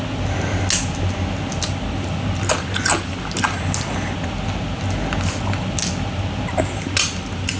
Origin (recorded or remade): recorded